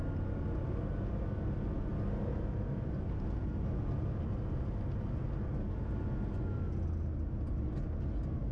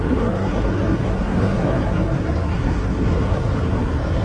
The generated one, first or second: second